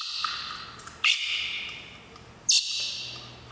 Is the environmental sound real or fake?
real